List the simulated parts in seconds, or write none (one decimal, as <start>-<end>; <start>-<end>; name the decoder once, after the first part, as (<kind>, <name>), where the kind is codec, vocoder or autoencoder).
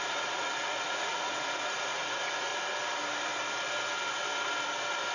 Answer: 0.0-2.5 (vocoder, Vocos)